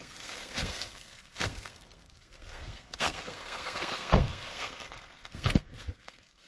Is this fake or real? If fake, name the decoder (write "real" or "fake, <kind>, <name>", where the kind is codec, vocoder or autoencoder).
fake, codec, SNAC